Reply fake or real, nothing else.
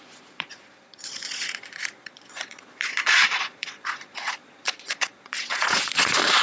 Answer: fake